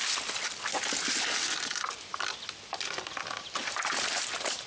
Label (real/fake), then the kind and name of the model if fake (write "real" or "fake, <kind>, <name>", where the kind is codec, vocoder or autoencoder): real